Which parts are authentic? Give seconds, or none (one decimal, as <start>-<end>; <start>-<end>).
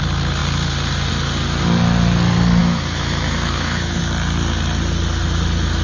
0.0-2.6; 4.0-5.8